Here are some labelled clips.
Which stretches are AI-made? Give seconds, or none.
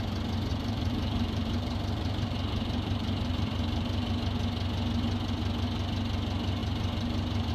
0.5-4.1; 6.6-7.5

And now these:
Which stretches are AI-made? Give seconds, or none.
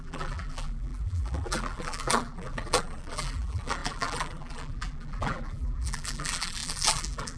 0.0-7.4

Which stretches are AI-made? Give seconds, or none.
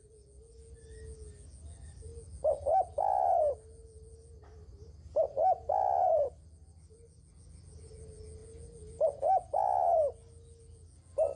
none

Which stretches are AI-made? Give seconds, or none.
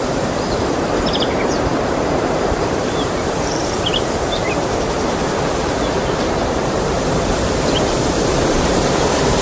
0.0-9.4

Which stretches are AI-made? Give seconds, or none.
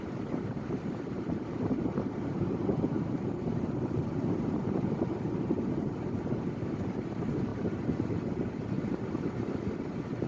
0.0-10.3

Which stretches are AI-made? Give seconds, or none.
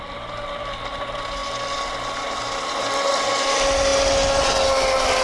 none